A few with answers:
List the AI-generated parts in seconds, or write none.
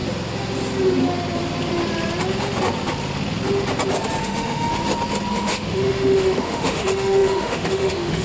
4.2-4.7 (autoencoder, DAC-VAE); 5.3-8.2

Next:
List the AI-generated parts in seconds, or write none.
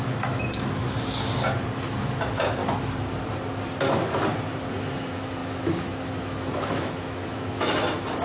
0.0-0.8 (autoencoder, DAC-VAE); 1.9-2.6; 4.7-8.2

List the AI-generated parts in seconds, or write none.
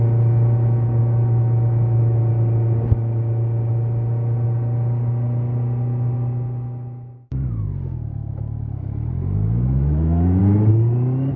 1.0-2.0 (autoencoder, DAC-VAE); 8.2-10.4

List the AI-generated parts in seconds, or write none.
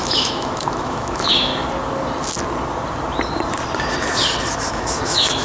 0.0-1.5 (autoencoder, DAC-VAE); 4.7-5.4